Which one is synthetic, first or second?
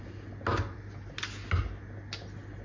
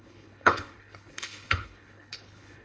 second